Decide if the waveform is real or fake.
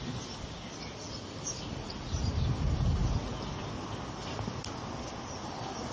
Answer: real